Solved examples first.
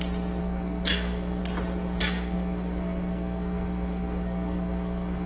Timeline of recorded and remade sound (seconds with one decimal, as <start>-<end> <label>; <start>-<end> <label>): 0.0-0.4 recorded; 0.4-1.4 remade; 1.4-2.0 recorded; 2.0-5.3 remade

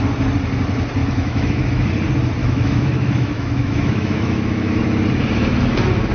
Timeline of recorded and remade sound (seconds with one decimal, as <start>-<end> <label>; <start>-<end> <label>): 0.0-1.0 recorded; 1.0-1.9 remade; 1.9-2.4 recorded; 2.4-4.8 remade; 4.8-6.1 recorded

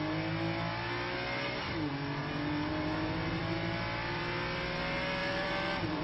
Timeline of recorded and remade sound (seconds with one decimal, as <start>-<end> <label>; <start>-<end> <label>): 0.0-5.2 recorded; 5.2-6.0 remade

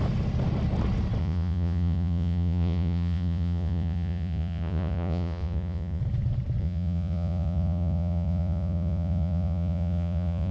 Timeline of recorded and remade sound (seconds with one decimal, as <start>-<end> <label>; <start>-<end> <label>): 0.0-1.2 recorded; 1.2-6.0 remade; 6.0-6.6 recorded; 6.6-10.5 remade

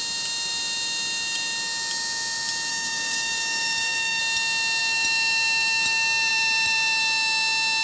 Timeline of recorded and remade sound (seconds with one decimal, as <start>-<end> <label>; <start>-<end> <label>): 0.0-2.7 recorded; 2.7-4.2 remade; 4.2-7.8 recorded